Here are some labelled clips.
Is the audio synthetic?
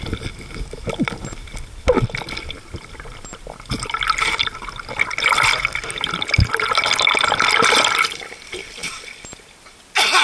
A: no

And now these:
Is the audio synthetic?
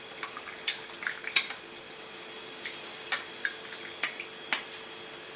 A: no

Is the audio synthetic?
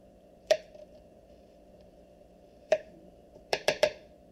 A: yes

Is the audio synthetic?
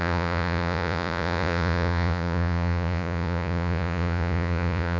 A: yes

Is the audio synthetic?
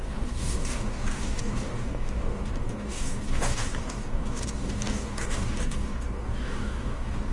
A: yes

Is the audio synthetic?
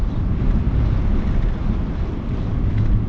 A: no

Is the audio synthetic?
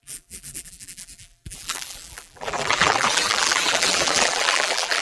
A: yes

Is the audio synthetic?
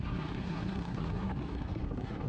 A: yes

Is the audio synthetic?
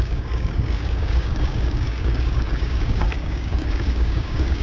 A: yes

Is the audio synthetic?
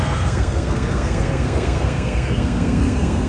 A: yes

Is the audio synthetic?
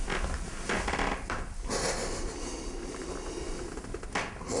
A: no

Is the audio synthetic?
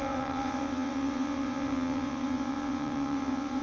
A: yes